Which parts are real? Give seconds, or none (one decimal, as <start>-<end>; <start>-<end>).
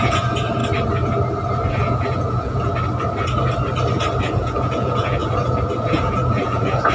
0.6-1.7; 2.7-4.2